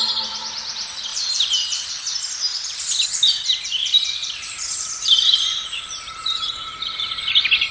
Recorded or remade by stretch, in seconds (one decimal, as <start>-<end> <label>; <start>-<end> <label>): 0.0-1.1 recorded; 1.1-1.9 remade; 1.9-3.8 recorded; 3.8-7.1 remade; 7.1-7.7 recorded